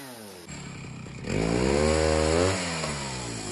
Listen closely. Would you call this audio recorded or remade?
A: recorded